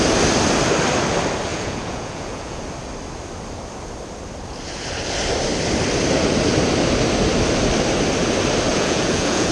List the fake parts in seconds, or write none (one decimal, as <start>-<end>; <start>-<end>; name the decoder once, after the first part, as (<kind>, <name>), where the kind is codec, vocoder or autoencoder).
1.5-2.6 (vocoder, Vocos); 8.7-9.5